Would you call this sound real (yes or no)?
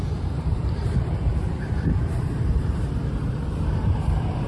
no